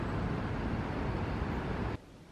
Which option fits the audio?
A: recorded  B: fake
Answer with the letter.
A